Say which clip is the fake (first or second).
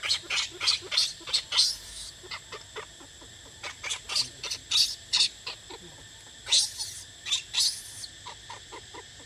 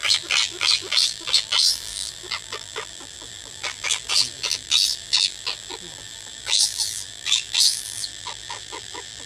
second